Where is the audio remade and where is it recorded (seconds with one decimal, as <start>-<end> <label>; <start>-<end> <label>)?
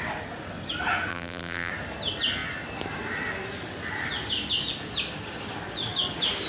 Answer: 0.0-1.1 recorded; 1.1-1.7 remade; 1.7-6.5 recorded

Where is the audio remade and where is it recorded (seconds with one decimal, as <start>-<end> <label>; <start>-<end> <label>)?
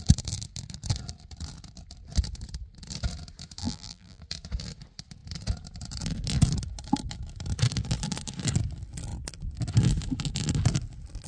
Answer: 0.0-3.6 recorded; 3.6-4.2 remade; 4.2-11.3 recorded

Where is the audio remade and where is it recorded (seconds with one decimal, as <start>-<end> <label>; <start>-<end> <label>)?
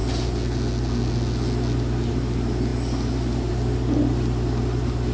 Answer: 0.0-5.1 recorded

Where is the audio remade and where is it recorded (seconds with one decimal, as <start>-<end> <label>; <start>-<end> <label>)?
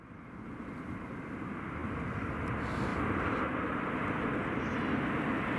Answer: 0.0-2.9 recorded; 2.9-4.6 remade; 4.6-5.6 recorded